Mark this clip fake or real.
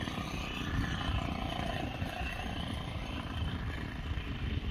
real